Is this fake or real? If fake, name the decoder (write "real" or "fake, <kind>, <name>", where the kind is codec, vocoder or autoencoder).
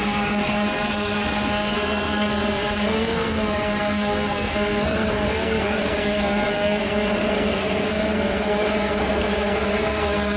fake, codec, SNAC